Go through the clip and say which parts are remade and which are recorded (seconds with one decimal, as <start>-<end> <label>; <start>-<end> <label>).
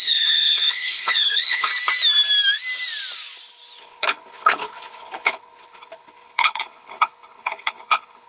0.0-1.7 remade; 1.7-3.8 recorded; 3.8-8.3 remade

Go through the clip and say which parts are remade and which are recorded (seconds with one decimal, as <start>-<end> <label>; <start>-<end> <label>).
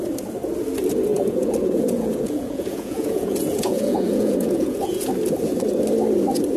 0.0-1.1 recorded; 1.1-5.1 remade; 5.1-6.6 recorded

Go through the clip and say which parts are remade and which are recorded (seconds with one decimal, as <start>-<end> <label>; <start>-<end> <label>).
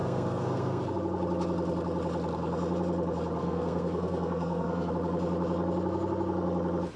0.0-0.8 remade; 0.8-3.4 recorded; 3.4-4.9 remade; 4.9-7.0 recorded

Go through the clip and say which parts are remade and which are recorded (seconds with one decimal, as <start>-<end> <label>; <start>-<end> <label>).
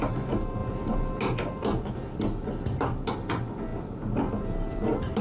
0.0-5.2 recorded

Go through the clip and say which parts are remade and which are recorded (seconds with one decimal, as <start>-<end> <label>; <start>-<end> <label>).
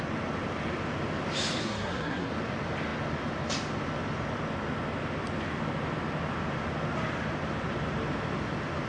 0.0-1.6 recorded; 1.6-2.3 remade; 2.3-8.9 recorded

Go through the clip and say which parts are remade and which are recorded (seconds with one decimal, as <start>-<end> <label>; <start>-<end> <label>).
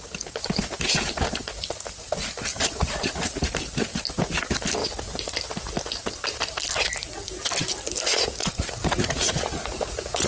0.0-2.5 recorded; 2.5-3.4 remade; 3.4-8.4 recorded; 8.4-10.3 remade